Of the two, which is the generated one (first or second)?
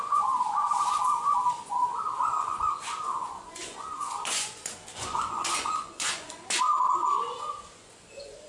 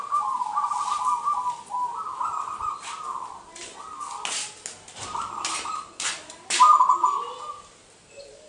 first